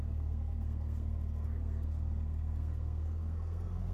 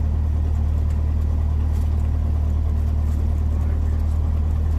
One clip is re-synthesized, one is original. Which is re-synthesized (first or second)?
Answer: first